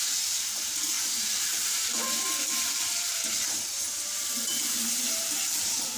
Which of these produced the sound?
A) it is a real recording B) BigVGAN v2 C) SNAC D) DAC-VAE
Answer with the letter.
B